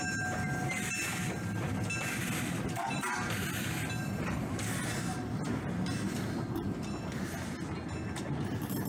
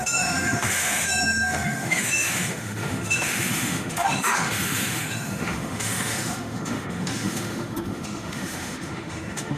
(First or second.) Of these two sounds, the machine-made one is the second